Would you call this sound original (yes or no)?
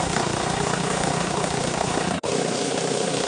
no